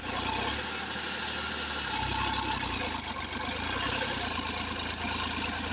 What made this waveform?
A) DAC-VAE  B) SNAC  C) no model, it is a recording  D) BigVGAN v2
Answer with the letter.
C